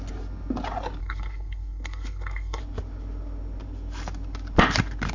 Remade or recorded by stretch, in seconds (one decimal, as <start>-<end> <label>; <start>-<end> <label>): 0.0-1.0 recorded; 1.0-2.6 remade; 2.6-5.1 recorded